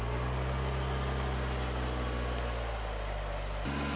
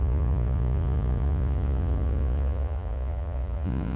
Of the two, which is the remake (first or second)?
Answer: second